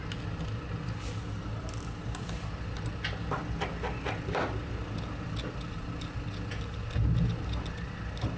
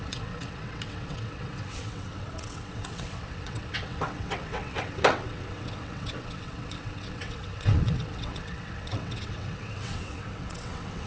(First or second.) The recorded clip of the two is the first